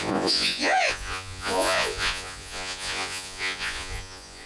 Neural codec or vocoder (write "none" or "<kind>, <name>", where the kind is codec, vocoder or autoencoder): vocoder, Vocos